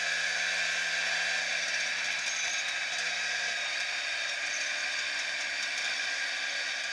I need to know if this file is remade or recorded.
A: recorded